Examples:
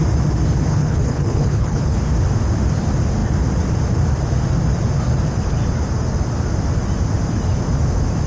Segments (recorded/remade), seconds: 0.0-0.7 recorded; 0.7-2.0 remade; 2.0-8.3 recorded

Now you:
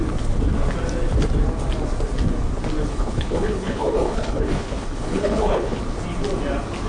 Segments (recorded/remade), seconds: 0.0-2.9 recorded; 2.9-5.8 remade; 5.8-6.9 recorded

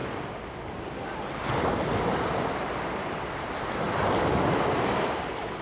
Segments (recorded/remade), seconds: 0.0-5.6 recorded

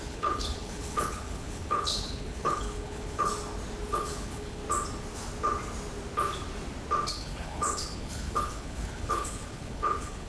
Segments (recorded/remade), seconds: 0.0-3.3 remade; 3.3-3.9 recorded; 3.9-4.6 remade; 4.6-7.1 recorded; 7.1-10.3 remade

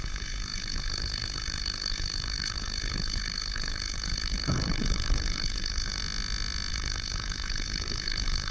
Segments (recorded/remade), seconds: 0.0-6.0 remade; 6.0-6.7 recorded; 6.7-8.5 remade

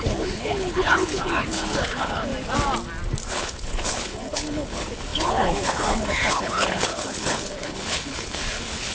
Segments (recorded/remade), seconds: 0.0-2.3 remade; 2.3-3.2 recorded; 3.2-8.9 remade

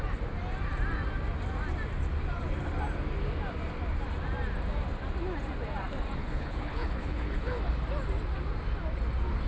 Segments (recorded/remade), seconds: 0.0-6.2 recorded; 6.2-7.6 remade; 7.6-9.5 recorded